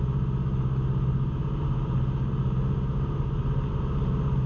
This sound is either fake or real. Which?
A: real